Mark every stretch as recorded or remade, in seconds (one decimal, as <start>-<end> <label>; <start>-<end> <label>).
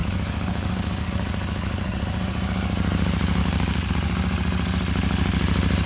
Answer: 0.0-2.0 remade; 2.0-3.4 recorded; 3.4-3.9 remade; 3.9-5.9 recorded